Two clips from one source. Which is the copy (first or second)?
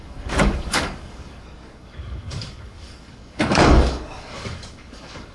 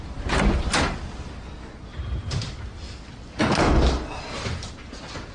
first